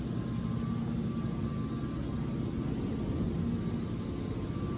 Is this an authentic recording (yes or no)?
yes